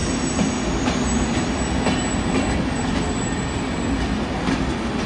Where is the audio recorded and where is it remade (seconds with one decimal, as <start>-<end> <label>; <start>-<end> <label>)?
0.0-5.1 recorded